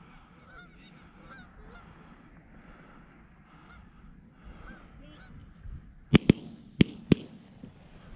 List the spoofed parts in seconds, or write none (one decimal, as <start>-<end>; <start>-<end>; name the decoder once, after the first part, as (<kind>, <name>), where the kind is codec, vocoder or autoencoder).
none